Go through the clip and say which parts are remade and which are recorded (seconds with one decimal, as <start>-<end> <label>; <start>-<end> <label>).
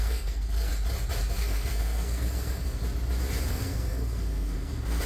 0.0-0.7 remade; 0.7-1.3 recorded; 1.3-2.8 remade; 2.8-3.5 recorded; 3.5-5.1 remade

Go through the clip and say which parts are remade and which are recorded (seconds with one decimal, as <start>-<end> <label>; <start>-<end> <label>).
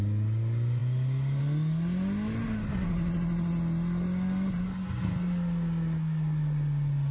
0.0-7.1 recorded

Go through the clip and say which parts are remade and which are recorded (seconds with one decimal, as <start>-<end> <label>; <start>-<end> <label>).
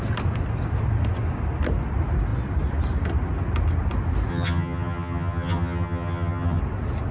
0.0-4.3 recorded; 4.3-6.6 remade; 6.6-7.1 recorded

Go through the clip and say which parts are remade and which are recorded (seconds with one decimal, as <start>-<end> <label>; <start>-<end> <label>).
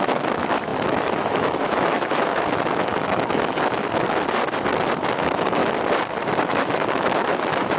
0.0-3.8 remade; 3.8-5.1 recorded; 5.1-5.6 remade; 5.6-6.4 recorded; 6.4-7.8 remade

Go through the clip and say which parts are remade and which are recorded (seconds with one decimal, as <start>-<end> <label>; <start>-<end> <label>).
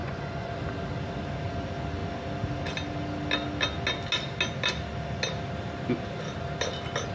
0.0-0.5 remade; 0.5-7.1 recorded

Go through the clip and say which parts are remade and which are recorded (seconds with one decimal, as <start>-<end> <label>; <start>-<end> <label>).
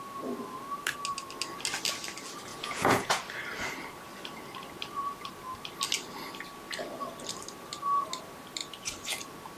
0.0-2.5 recorded; 2.5-3.2 remade; 3.2-9.6 recorded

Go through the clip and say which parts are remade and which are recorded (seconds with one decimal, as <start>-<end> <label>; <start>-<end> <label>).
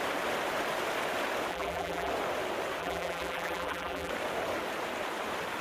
0.0-1.5 recorded; 1.5-2.1 remade; 2.1-2.8 recorded; 2.8-4.1 remade; 4.1-5.6 recorded